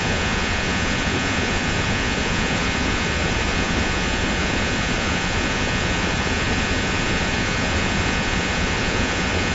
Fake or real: fake